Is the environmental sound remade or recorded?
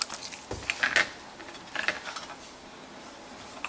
recorded